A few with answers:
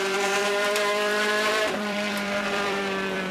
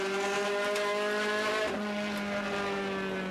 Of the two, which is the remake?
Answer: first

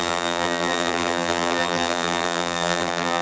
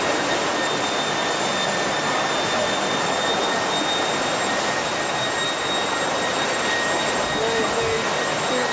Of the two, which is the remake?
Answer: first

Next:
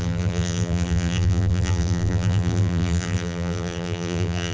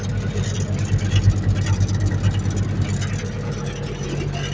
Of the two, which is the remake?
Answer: first